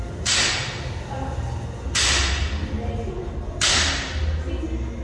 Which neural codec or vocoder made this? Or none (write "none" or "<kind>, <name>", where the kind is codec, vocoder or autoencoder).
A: none